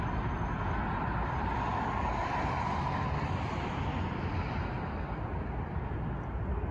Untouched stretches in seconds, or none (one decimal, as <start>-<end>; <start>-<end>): 0.0-1.1; 5.1-6.7